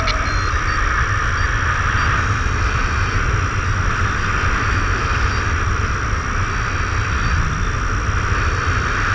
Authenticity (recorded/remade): recorded